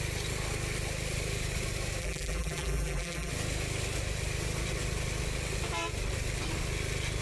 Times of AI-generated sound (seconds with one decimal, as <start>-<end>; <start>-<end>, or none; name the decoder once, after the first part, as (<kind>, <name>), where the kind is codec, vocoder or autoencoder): 2.0-3.3 (vocoder, BigVGAN v2)